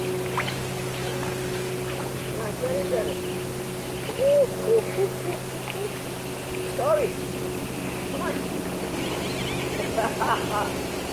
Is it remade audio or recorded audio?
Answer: recorded